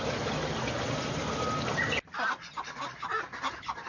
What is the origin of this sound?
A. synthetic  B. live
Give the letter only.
B